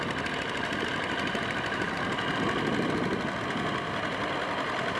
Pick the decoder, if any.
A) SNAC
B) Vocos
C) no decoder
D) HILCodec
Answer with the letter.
C